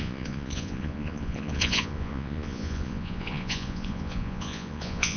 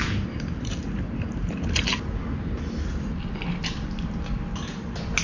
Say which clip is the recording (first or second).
second